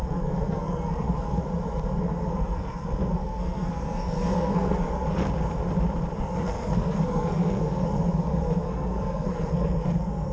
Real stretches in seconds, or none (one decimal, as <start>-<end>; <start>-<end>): 1.4-2.0; 5.2-6.2